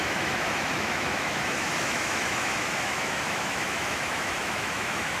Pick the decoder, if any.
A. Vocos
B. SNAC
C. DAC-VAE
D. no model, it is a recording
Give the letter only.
C